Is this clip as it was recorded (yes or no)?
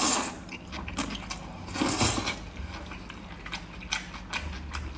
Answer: yes